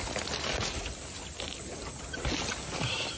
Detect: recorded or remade recorded